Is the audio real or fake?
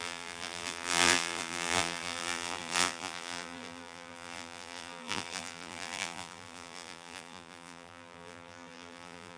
fake